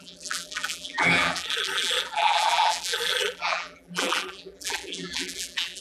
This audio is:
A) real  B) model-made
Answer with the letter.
B